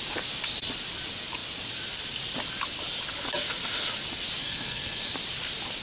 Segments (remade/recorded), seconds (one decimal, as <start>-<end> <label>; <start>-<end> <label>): 0.0-4.4 recorded; 4.4-5.1 remade; 5.1-5.8 recorded